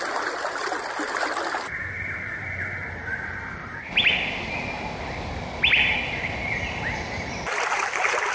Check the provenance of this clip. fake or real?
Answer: real